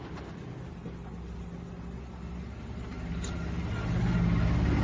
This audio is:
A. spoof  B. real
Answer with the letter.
B